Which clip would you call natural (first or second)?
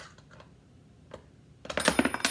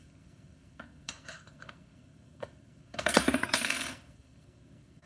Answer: first